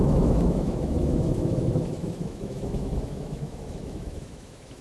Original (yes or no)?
no